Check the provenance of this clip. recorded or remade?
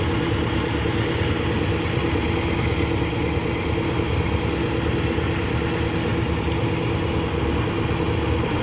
recorded